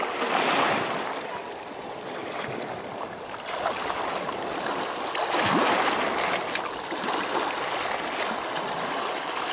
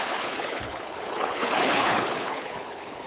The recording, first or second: first